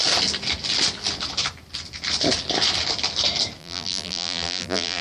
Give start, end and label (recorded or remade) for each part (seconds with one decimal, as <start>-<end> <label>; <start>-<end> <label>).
0.0-3.6 recorded; 3.6-5.0 remade

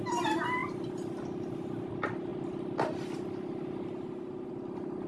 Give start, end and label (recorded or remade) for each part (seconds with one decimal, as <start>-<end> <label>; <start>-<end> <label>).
0.0-5.1 recorded

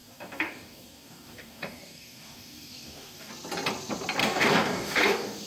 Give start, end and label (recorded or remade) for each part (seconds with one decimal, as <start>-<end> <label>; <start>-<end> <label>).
0.0-3.3 remade; 3.3-4.2 recorded; 4.2-5.5 remade

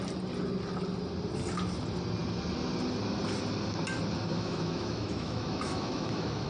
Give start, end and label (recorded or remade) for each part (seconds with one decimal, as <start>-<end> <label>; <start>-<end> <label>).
0.0-4.3 recorded; 4.3-6.5 remade

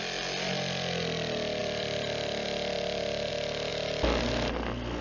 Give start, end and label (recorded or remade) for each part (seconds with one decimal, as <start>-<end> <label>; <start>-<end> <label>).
0.0-1.6 recorded; 1.6-3.3 remade; 3.3-5.0 recorded

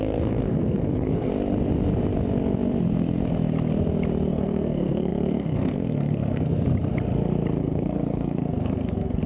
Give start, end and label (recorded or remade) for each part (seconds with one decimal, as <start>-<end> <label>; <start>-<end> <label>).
0.0-1.3 remade; 1.3-4.3 recorded; 4.3-6.5 remade; 6.5-7.6 recorded; 7.6-9.3 remade